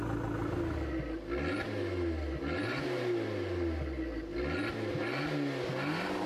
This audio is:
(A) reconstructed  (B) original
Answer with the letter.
B